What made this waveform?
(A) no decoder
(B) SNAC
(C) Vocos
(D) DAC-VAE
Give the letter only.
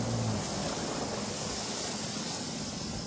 A